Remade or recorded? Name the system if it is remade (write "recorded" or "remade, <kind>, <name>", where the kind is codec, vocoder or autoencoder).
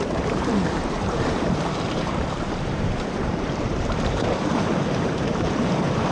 remade, vocoder, BigVGAN v2